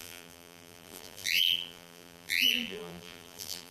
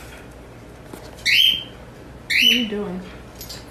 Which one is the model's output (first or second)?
first